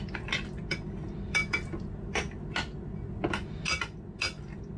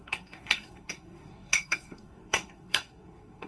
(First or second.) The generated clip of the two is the second